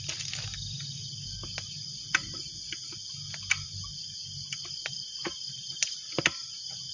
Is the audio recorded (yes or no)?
yes